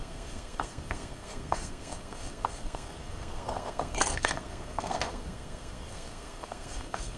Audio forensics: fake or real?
fake